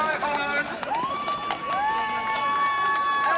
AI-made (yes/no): no